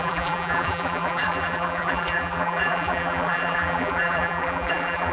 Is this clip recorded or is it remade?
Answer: remade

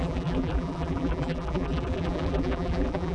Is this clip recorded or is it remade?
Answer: remade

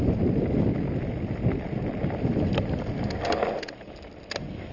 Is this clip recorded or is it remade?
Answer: recorded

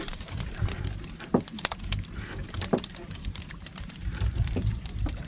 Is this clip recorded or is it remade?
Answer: remade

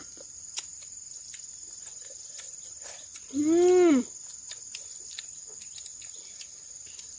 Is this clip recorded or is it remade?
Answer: recorded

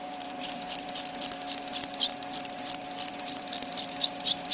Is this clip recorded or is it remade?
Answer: remade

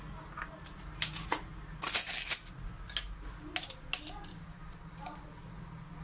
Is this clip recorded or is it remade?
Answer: recorded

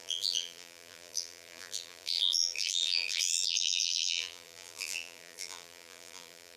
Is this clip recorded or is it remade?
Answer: remade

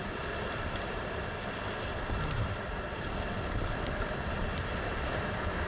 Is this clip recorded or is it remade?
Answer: remade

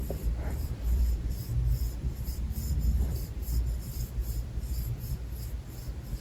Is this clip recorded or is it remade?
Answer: remade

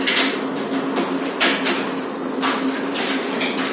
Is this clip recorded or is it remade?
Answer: recorded